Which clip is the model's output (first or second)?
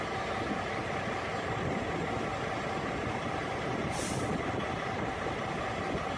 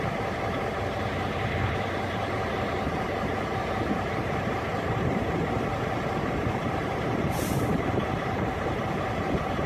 second